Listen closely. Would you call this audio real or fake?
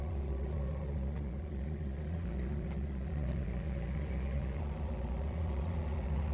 fake